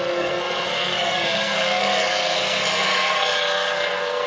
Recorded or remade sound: remade